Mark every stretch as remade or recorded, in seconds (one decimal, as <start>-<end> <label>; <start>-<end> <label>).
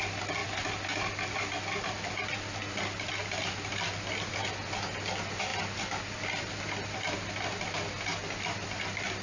0.0-9.2 recorded